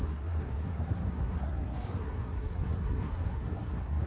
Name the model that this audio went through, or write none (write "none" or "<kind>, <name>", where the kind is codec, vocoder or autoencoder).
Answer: codec, SNAC